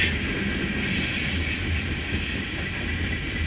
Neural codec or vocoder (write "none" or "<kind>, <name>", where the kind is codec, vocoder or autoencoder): none